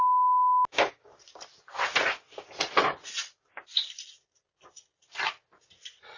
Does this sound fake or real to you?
real